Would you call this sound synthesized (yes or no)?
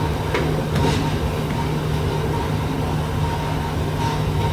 no